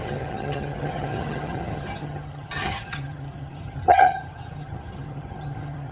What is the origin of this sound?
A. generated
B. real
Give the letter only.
A